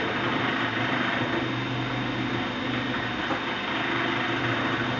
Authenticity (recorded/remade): recorded